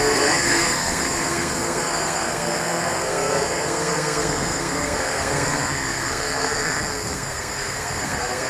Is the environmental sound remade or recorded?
remade